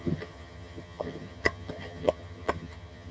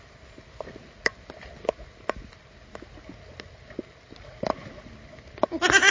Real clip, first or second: second